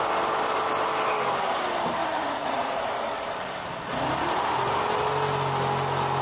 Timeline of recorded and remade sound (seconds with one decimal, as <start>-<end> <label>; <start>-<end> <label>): 0.0-2.0 recorded; 2.0-2.9 remade; 2.9-6.2 recorded